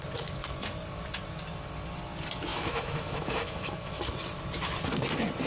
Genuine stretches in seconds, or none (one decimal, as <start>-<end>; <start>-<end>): 0.0-2.5; 4.0-5.5